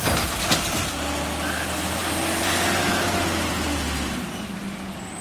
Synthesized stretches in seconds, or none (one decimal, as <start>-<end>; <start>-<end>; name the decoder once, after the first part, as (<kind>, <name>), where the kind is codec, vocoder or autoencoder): none